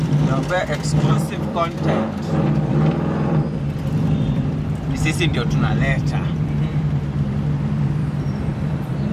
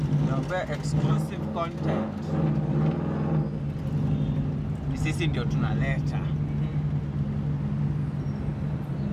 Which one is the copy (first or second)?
first